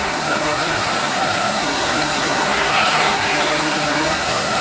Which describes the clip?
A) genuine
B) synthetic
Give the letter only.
B